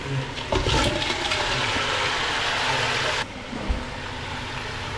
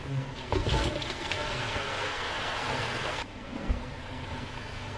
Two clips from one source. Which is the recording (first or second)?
first